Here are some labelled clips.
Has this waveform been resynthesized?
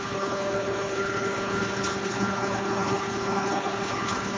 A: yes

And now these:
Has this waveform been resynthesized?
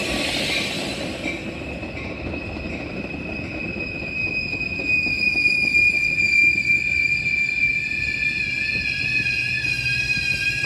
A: no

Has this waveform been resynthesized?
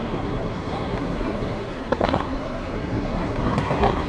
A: yes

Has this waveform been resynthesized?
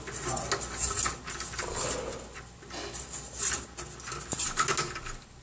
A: no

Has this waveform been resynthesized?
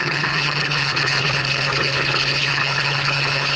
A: yes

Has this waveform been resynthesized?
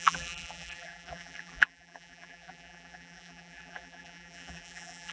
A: yes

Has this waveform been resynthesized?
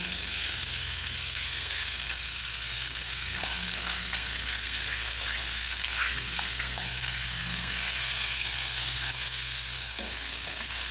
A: yes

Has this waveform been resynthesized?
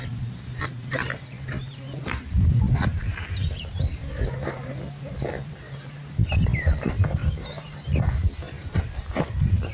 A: yes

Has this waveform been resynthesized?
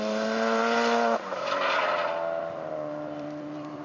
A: yes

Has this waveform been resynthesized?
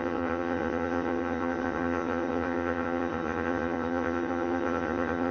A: yes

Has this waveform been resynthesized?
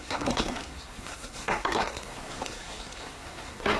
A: yes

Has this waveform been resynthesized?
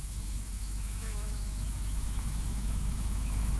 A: yes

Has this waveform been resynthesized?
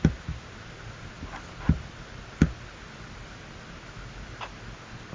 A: no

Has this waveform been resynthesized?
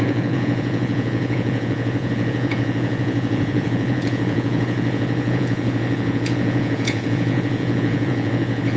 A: yes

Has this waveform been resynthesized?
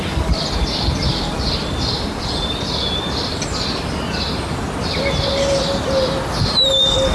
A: no